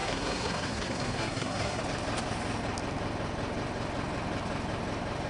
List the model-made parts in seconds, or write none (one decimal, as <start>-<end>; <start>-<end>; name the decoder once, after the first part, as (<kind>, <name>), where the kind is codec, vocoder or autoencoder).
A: 0.0-1.8 (codec, SNAC)